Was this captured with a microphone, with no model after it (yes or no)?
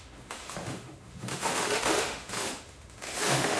no